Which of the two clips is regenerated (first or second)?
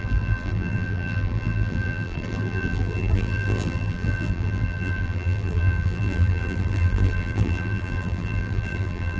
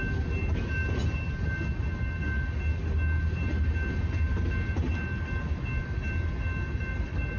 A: first